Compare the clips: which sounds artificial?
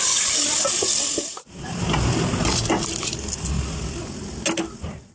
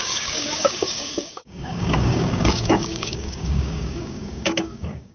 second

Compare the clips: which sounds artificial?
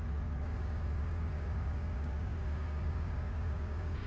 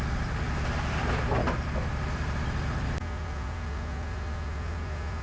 first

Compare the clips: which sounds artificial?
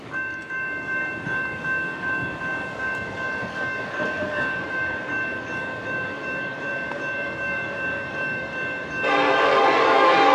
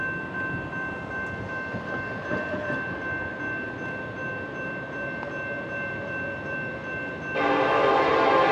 first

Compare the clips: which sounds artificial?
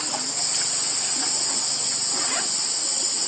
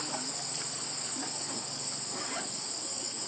second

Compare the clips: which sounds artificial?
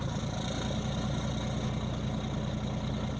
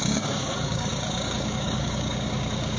second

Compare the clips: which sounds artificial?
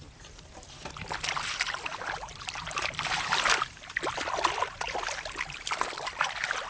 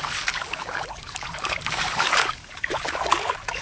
second